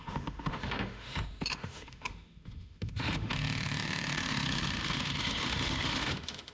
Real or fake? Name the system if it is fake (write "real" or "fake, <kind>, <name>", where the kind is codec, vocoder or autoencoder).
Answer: fake, autoencoder, DAC-VAE